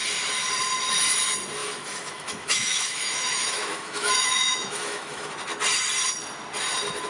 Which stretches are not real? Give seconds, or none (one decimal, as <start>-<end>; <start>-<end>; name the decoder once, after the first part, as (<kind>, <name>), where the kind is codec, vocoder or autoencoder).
1.6-5.3 (autoencoder, DAC-VAE)